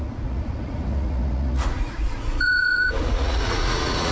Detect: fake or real fake